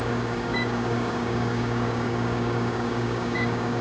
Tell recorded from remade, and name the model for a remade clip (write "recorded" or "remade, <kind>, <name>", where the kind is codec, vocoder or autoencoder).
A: remade, codec, DAC